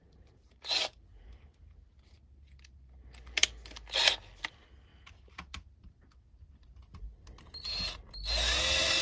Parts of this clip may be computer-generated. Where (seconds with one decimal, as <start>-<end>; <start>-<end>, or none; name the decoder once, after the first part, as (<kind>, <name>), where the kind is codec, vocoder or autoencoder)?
0.0-2.1 (vocoder, BigVGAN v2); 4.9-5.9